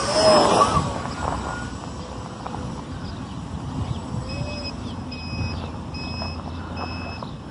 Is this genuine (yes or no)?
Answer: yes